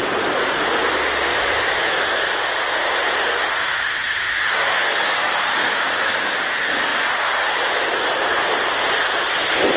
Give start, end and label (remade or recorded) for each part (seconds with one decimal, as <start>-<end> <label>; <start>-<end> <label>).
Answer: 0.0-1.3 recorded; 1.3-2.0 remade; 2.0-3.6 recorded; 3.6-6.4 remade; 6.4-9.8 recorded